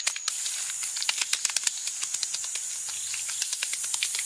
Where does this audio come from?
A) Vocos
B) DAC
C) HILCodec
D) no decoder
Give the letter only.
D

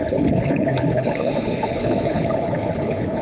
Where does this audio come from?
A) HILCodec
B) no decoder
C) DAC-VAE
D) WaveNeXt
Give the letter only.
A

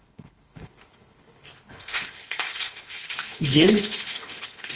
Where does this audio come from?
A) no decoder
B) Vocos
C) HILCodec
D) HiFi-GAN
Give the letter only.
C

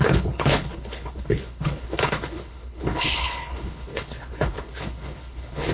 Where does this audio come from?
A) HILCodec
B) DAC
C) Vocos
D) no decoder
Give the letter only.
A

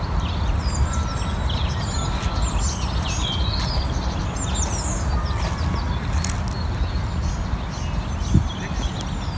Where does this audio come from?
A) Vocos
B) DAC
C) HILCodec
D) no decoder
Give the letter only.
D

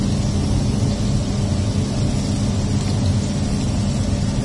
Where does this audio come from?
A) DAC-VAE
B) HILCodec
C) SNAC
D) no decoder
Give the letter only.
D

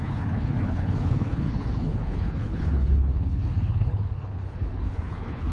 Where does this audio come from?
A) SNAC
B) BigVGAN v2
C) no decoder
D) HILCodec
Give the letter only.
D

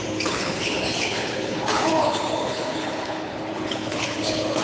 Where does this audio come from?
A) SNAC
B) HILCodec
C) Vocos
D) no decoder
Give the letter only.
B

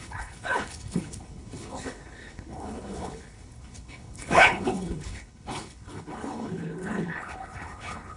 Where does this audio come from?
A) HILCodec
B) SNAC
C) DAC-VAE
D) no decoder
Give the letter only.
A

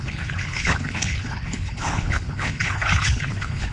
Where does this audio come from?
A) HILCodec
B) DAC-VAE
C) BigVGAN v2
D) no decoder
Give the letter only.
A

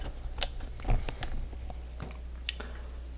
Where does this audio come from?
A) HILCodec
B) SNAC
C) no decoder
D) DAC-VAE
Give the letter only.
C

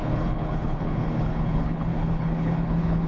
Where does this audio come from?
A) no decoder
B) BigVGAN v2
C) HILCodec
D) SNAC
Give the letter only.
C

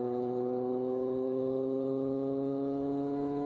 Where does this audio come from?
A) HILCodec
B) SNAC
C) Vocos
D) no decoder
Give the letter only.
A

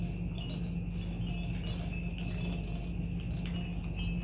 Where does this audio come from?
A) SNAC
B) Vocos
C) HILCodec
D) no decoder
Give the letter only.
D